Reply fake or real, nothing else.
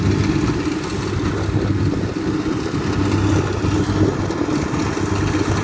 real